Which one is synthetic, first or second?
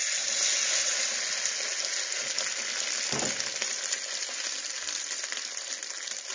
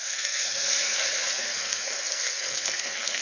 second